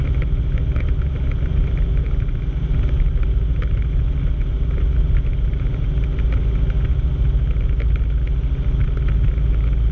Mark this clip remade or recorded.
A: recorded